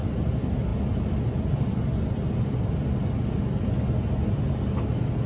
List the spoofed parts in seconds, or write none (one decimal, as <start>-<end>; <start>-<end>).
none

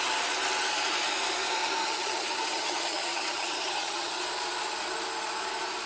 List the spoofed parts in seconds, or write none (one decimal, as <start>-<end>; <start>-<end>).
1.8-4.2

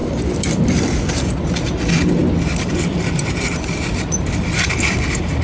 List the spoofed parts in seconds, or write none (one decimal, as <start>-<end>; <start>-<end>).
0.0-0.8; 2.2-4.5

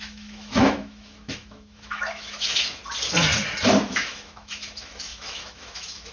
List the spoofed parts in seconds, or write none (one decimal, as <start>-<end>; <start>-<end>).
0.0-2.8; 3.9-6.1

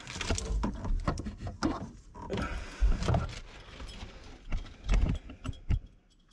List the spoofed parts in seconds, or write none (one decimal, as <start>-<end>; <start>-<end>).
none

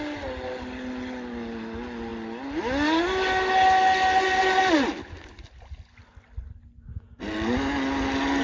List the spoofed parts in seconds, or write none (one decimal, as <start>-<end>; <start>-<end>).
none